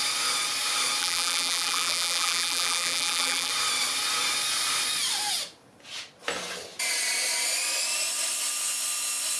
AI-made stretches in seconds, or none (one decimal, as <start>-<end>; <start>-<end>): 1.0-3.5